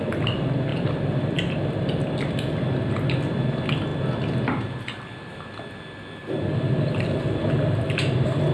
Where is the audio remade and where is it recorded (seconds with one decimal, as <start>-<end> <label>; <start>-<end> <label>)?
0.0-0.7 recorded; 0.7-2.3 remade; 2.3-6.2 recorded; 6.2-8.5 remade